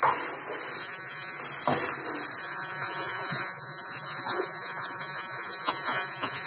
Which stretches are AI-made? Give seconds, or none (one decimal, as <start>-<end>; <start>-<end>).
0.8-1.4; 2.4-6.5

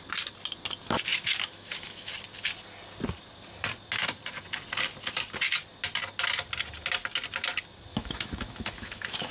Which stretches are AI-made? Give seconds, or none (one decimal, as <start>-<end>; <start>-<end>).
1.1-2.1; 7.9-9.3

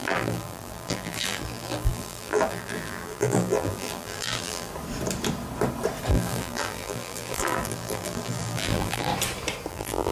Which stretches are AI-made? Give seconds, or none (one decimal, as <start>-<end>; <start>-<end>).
0.0-4.7; 6.1-9.1; 9.7-10.1

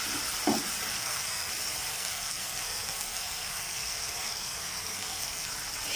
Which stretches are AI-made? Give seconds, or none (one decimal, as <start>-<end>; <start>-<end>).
0.9-1.5; 1.9-5.5

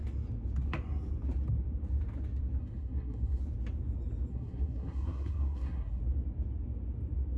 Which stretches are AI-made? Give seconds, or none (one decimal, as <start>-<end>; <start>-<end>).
2.6-3.4; 4.3-6.0

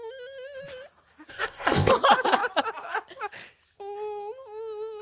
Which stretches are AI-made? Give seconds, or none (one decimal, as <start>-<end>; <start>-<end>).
1.3-1.9